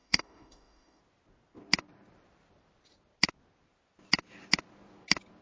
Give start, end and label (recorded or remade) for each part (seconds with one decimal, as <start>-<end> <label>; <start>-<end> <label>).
0.0-1.0 remade; 1.0-5.4 recorded